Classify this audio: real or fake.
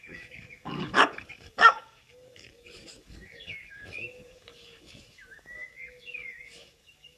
fake